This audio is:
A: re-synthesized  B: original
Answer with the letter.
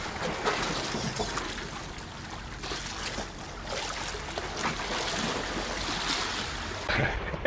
B